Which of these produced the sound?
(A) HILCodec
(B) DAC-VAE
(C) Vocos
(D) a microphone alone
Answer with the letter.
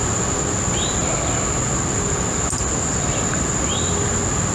D